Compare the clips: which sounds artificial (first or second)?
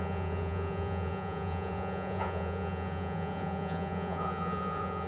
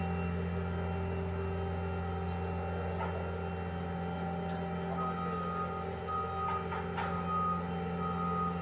first